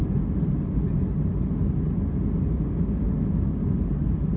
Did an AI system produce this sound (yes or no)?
no